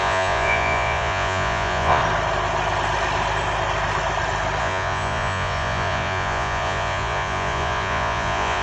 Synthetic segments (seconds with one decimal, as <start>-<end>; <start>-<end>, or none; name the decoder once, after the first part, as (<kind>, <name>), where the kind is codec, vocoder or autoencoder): 0.0-2.0 (vocoder, Vocos); 4.6-8.6